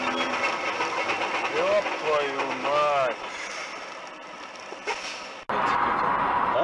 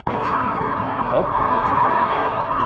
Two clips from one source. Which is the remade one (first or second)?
second